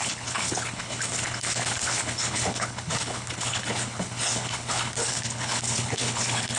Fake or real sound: fake